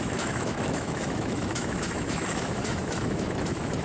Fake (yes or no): yes